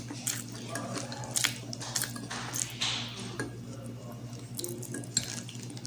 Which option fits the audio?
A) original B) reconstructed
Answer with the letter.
A